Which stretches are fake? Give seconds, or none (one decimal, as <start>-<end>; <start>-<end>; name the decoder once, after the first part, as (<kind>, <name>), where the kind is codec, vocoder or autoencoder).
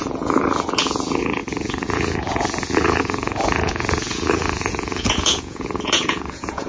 0.0-6.7 (vocoder, Vocos)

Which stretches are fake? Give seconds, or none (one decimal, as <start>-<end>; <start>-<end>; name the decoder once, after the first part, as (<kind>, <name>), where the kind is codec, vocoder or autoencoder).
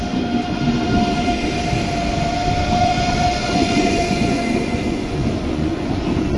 2.8-6.4 (vocoder, Vocos)